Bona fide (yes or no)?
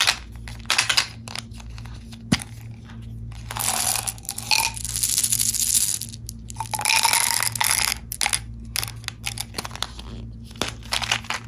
yes